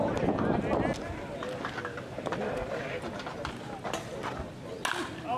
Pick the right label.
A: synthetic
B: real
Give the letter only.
B